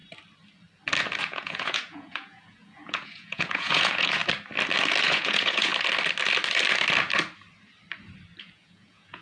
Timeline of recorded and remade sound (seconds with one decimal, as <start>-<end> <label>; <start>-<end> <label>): 0.0-1.2 recorded; 1.2-4.2 remade; 4.2-5.0 recorded; 5.0-5.7 remade; 5.7-8.4 recorded; 8.4-9.2 remade